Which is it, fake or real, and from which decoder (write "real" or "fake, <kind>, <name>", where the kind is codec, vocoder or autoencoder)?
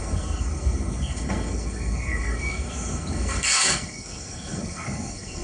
fake, codec, SNAC